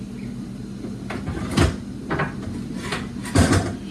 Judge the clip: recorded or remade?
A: recorded